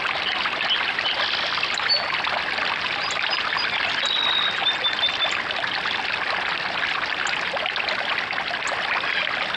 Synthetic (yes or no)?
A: no